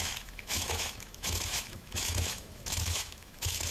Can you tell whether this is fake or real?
fake